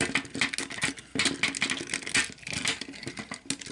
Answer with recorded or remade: recorded